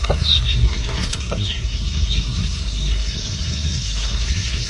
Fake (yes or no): yes